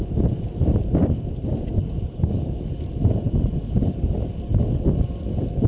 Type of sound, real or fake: real